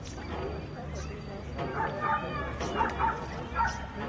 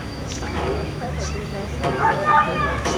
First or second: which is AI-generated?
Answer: second